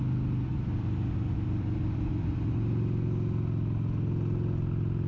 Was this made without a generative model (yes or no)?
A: yes